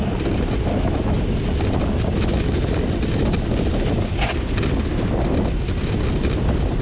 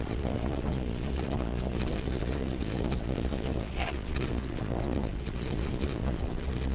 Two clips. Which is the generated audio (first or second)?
second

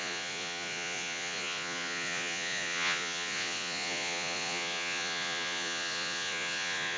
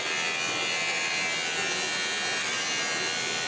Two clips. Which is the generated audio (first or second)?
first